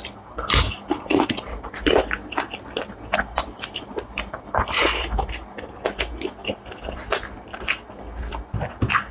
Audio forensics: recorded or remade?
recorded